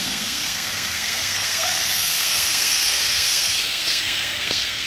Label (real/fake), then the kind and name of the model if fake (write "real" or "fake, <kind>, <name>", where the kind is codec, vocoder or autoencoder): fake, codec, SNAC